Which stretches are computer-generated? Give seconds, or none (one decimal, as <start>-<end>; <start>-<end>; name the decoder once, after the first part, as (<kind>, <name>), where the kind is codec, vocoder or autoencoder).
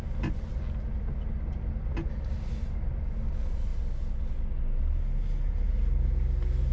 none